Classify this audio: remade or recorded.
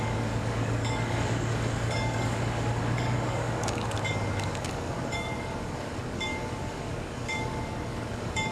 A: remade